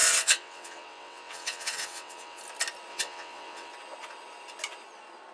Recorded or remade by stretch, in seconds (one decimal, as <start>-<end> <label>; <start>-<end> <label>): 0.0-2.4 remade; 2.4-2.9 recorded; 2.9-3.7 remade; 3.7-5.3 recorded